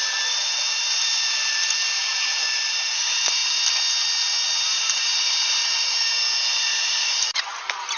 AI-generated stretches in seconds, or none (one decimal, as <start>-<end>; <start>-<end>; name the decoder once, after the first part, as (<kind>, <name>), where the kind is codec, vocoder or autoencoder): 0.0-3.0 (vocoder, BigVGAN v2); 4.7-6.0; 6.7-7.4